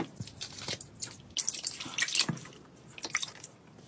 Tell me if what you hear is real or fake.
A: real